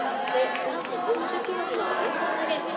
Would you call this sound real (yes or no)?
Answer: yes